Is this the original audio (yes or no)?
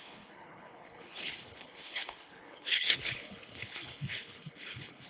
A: no